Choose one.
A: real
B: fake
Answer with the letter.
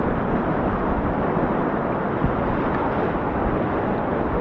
A